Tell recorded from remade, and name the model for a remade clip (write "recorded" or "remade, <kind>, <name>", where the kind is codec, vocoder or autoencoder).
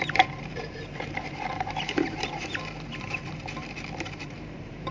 remade, vocoder, BigVGAN v2